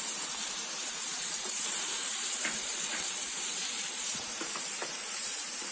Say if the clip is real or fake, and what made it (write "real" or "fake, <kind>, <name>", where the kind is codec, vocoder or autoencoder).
fake, vocoder, BigVGAN v2